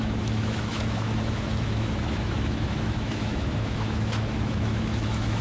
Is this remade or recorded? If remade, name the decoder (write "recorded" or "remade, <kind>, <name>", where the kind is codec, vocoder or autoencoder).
remade, autoencoder, DAC-VAE